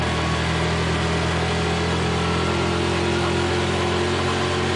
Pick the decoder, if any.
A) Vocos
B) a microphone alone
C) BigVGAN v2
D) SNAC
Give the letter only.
B